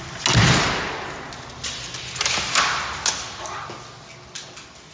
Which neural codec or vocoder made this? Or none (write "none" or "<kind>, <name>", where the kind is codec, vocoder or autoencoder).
none